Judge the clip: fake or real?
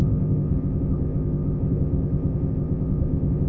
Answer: fake